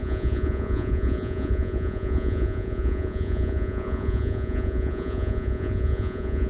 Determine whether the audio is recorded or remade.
remade